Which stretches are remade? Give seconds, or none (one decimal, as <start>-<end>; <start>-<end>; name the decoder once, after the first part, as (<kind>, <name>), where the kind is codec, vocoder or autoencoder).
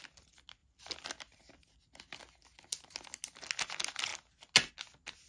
none